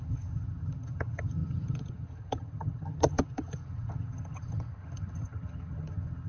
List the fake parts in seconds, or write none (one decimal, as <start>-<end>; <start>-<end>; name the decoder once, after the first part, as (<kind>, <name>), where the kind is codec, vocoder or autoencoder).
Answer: 0.0-6.3 (vocoder, HiFi-GAN)